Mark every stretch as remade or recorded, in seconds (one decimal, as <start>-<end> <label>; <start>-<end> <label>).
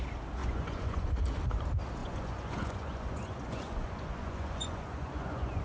0.0-0.4 recorded; 0.4-1.1 remade; 1.1-2.0 recorded; 2.0-5.6 remade